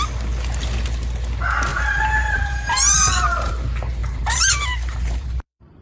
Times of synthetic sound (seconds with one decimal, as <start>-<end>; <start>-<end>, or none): 1.7-3.5; 4.0-5.8